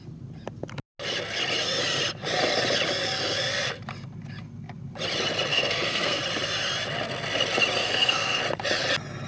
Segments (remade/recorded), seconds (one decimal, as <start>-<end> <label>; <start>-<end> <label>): 0.0-5.5 recorded; 5.5-6.2 remade; 6.2-7.8 recorded; 7.8-8.4 remade; 8.4-9.3 recorded